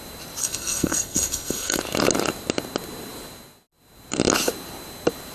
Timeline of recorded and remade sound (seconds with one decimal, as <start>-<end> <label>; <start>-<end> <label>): 0.0-0.4 recorded; 0.4-1.8 remade; 1.8-5.3 recorded